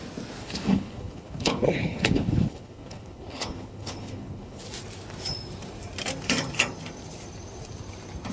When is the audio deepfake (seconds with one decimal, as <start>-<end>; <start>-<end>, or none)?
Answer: 0.4-4.6